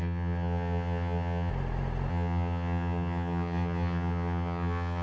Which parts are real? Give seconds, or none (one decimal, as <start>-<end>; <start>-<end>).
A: 1.5-2.1

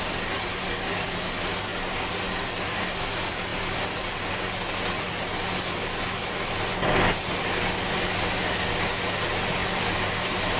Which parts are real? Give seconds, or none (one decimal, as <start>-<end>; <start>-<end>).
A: 0.0-10.6

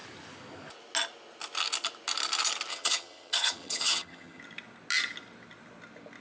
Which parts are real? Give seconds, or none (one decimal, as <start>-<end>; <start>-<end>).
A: 0.0-2.7; 4.4-6.2

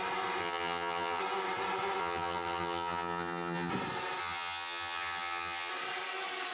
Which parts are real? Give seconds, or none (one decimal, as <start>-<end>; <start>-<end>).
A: 0.0-0.4; 1.2-2.0; 3.7-4.2; 5.7-6.5

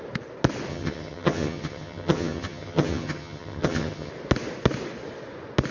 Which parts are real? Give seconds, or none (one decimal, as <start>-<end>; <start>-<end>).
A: 0.0-0.7; 4.1-5.7

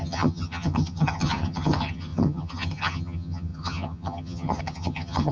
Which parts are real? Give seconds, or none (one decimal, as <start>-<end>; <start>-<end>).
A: none